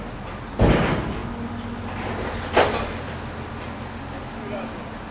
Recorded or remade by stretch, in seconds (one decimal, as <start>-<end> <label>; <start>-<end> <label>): 0.0-5.1 recorded